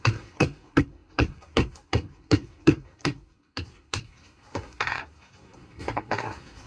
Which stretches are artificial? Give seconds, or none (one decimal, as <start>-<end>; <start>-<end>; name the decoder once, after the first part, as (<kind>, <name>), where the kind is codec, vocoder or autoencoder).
0.0-6.7 (codec, SNAC)